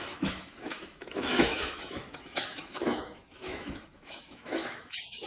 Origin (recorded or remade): remade